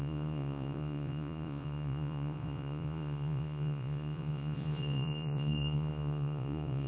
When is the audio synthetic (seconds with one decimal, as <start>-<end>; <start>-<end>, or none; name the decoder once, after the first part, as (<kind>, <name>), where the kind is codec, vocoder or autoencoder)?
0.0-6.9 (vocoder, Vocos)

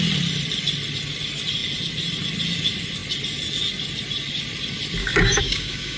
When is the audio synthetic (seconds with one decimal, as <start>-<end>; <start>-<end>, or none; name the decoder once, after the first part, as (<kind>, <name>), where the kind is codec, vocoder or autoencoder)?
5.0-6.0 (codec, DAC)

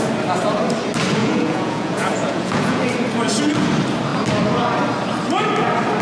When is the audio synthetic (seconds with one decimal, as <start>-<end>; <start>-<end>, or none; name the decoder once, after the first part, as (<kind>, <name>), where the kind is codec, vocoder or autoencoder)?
1.2-2.8 (vocoder, Vocos)

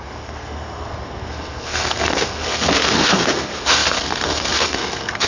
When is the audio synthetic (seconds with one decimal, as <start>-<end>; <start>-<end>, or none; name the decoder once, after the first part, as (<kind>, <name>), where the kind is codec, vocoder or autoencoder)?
0.0-5.3 (codec, SNAC)

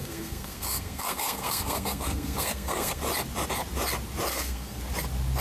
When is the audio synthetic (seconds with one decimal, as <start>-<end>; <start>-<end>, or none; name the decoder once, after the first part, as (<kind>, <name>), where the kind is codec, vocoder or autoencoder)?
0.0-3.0 (codec, SNAC); 4.3-4.8

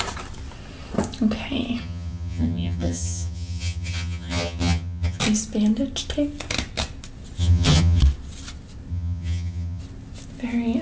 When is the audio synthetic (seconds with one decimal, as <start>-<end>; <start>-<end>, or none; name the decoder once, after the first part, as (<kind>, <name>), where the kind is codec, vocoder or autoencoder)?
1.8-5.2 (vocoder, HiFi-GAN); 7.4-8.0; 8.9-9.8

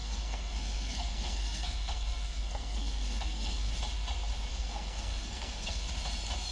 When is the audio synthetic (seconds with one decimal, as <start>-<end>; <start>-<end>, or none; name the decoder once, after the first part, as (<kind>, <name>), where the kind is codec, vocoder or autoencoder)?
0.0-3.7 (codec, SNAC); 4.5-5.9

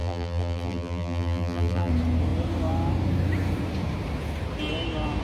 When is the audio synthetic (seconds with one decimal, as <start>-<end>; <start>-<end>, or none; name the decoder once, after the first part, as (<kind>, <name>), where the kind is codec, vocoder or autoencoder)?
0.0-1.9 (vocoder, BigVGAN v2)